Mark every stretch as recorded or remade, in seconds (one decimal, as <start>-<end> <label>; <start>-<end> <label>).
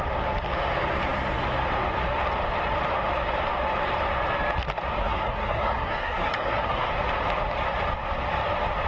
0.0-5.0 recorded; 5.0-6.9 remade; 6.9-8.9 recorded